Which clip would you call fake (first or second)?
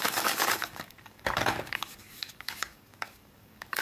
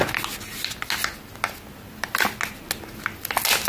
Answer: first